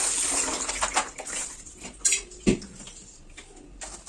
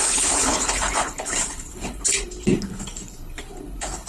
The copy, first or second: second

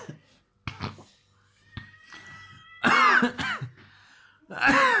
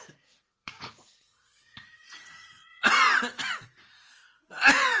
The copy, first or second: second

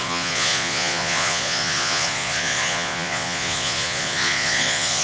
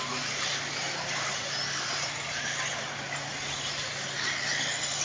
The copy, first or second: first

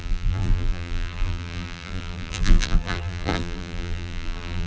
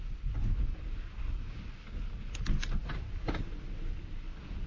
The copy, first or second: first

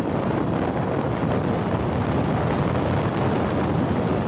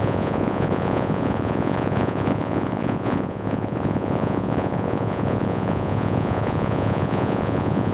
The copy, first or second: second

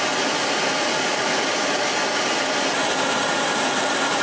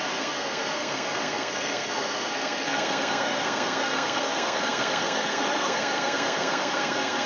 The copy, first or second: second